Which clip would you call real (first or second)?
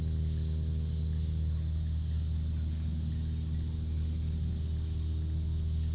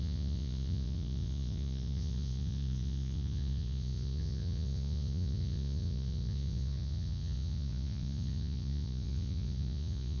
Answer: first